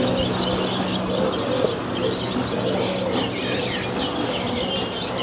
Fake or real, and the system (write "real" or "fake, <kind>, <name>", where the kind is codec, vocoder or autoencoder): real